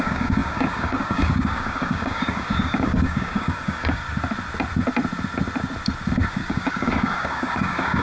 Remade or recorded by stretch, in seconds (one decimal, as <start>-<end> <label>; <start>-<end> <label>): 0.0-4.0 remade; 4.0-6.3 recorded; 6.3-8.0 remade